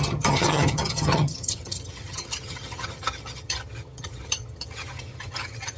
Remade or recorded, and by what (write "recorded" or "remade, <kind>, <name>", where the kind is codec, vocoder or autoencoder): remade, vocoder, HiFi-GAN